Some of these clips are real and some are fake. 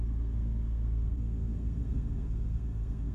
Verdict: fake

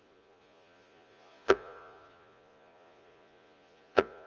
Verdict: fake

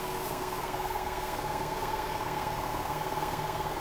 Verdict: fake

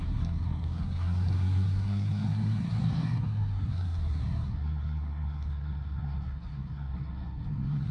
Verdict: fake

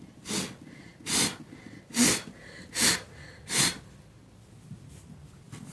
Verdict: real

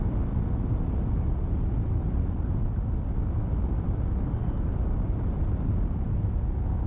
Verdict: real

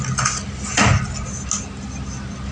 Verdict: real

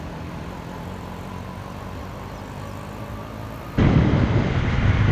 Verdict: real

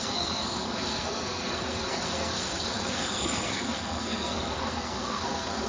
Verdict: fake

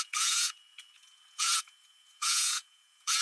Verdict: fake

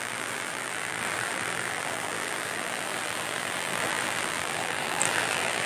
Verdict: fake